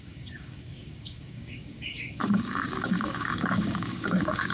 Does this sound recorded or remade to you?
remade